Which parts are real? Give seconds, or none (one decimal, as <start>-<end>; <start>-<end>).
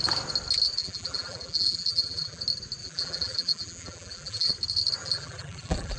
0.0-0.8; 2.4-2.8; 4.5-5.0